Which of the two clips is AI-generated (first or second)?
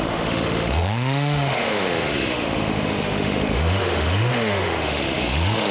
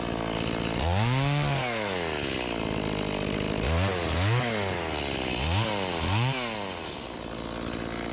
first